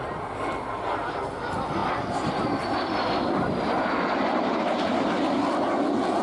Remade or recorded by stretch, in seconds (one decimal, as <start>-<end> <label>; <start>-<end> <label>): 0.0-6.2 recorded